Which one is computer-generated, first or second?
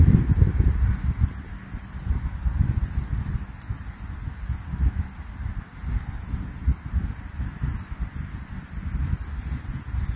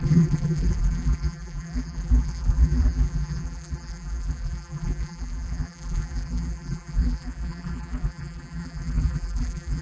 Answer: second